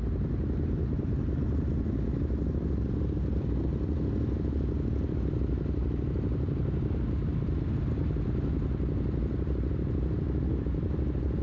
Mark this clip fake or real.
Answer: real